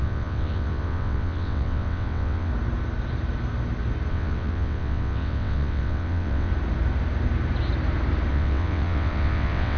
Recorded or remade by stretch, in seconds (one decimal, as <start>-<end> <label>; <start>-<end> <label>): 0.0-2.5 remade; 2.5-4.1 recorded; 4.1-6.5 remade; 6.5-8.3 recorded; 8.3-9.8 remade